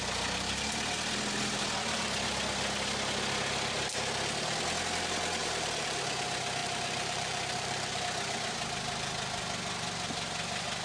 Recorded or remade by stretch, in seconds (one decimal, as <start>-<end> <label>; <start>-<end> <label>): 0.0-5.4 recorded; 5.4-6.0 remade; 6.0-6.6 recorded; 6.6-8.0 remade; 8.0-10.8 recorded